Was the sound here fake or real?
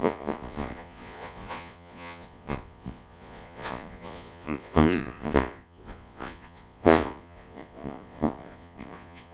fake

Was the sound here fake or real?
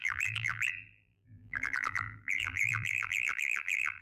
fake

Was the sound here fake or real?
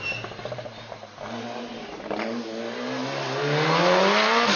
real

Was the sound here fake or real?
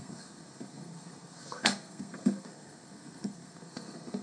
fake